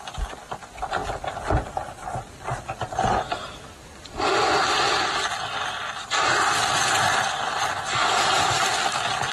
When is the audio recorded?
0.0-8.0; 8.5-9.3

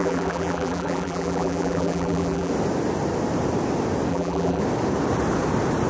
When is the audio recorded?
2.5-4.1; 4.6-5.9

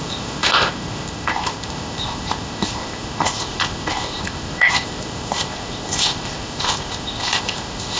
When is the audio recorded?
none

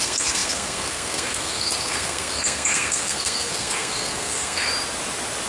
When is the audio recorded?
4.7-5.5

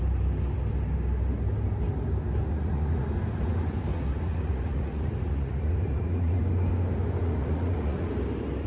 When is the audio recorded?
0.0-2.4; 3.1-3.9; 6.4-7.2; 8.1-8.7

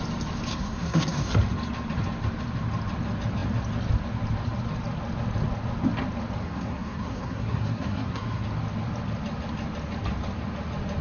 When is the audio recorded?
0.0-0.5; 1.3-6.4; 8.4-11.0